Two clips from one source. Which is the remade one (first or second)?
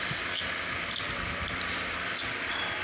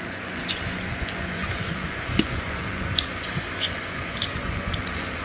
second